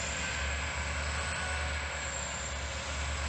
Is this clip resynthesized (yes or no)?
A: no